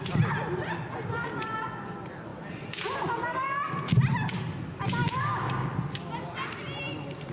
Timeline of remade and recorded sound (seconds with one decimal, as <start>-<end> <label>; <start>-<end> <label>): 0.0-5.0 recorded; 5.0-5.7 remade; 5.7-7.3 recorded